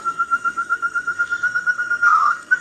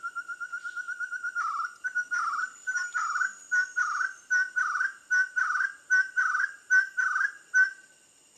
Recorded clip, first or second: second